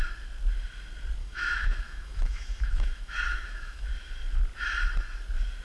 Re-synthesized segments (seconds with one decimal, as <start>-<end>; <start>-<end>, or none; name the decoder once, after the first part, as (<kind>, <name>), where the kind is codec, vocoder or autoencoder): 1.2-3.9 (autoencoder, DAC-VAE)